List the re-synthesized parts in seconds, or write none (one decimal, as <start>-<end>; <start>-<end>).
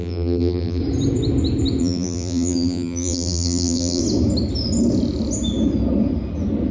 0.0-0.8; 1.8-4.0